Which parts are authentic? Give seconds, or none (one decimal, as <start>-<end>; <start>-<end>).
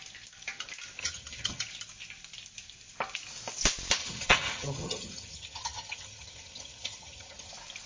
0.0-1.0; 1.6-4.0; 7.5-7.9